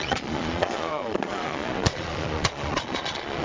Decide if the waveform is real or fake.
fake